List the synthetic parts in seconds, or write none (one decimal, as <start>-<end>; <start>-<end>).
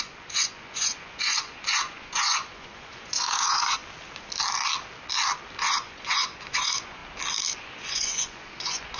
0.0-3.8; 5.6-7.0; 7.5-9.0